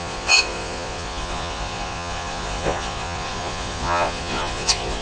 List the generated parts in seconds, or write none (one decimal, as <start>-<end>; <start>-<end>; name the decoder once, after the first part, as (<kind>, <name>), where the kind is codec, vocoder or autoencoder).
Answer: 0.0-5.0 (vocoder, Vocos)